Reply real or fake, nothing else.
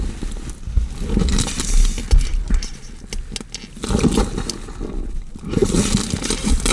real